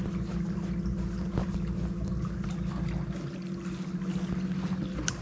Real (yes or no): yes